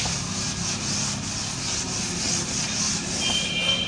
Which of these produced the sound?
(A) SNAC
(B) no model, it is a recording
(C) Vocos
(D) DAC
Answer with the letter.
B